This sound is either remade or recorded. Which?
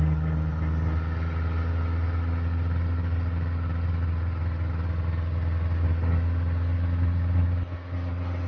recorded